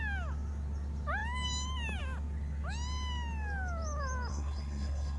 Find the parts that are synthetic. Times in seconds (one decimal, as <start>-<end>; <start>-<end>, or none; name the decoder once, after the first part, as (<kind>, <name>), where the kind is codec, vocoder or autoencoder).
4.3-5.2 (codec, SNAC)

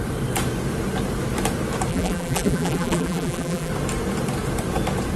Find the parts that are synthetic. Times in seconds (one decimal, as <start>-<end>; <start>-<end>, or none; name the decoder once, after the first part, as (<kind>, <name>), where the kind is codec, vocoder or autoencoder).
1.9-3.7 (vocoder, BigVGAN v2)

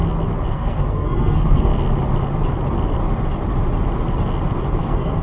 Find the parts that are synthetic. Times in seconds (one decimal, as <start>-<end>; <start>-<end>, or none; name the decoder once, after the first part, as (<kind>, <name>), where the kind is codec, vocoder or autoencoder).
0.5-1.7 (codec, SNAC); 4.8-5.2

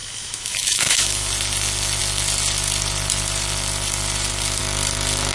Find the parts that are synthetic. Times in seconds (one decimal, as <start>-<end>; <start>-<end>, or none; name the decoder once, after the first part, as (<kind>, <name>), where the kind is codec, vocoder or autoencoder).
0.0-1.3 (autoencoder, DAC-VAE)

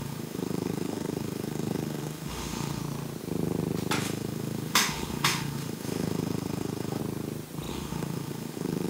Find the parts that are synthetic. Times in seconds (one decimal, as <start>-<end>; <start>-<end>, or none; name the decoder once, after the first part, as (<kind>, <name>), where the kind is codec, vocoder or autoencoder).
0.0-2.8 (autoencoder, DAC-VAE); 4.0-7.0; 7.7-8.9

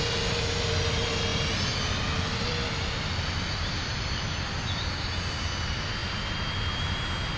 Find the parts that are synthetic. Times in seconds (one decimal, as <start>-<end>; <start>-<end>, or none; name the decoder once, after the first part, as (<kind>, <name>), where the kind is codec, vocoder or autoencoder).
none